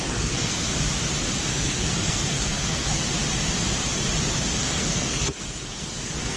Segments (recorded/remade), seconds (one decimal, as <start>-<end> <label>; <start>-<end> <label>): 0.0-0.7 remade; 0.7-1.5 recorded; 1.5-3.0 remade; 3.0-4.6 recorded; 4.6-6.4 remade